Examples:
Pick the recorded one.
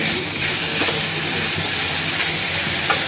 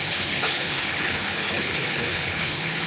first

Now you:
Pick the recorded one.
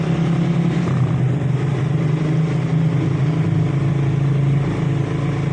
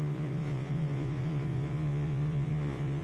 first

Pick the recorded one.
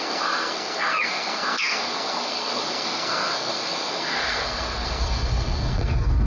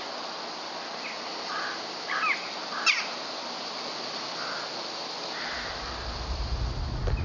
second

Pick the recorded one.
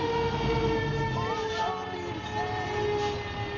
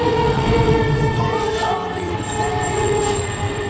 first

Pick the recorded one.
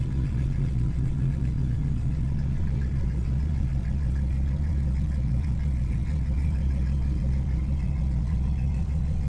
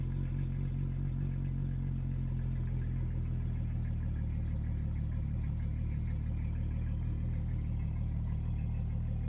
second